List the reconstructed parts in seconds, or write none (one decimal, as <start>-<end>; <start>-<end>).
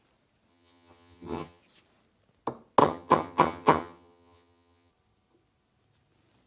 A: 0.5-1.6; 2.8-4.9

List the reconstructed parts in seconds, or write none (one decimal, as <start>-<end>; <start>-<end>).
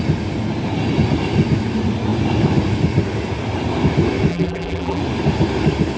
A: 4.3-5.0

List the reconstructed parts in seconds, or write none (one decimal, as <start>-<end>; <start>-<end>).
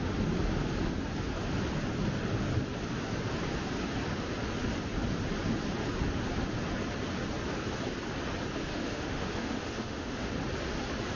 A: 8.6-10.3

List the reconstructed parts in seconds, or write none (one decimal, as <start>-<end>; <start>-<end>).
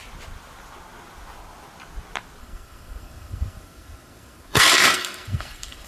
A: 2.4-5.9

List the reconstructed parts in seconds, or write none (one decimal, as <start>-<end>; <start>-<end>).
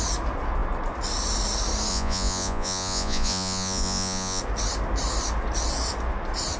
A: 1.9-4.4